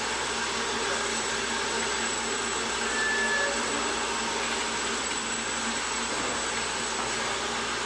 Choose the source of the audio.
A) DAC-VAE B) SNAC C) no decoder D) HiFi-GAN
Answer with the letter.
C